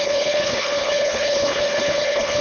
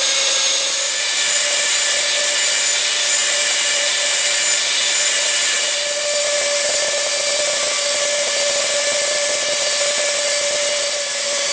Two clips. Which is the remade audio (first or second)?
first